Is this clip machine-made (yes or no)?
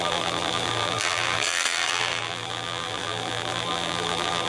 yes